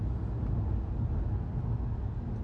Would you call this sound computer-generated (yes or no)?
no